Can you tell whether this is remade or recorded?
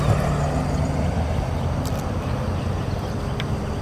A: recorded